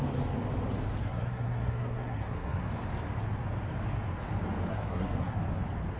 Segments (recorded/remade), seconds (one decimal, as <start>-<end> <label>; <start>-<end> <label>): 0.0-1.0 recorded; 1.0-2.7 remade; 2.7-4.7 recorded; 4.7-5.4 remade; 5.4-6.0 recorded